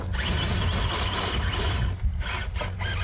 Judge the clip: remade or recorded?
recorded